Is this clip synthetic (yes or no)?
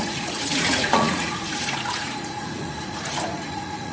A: yes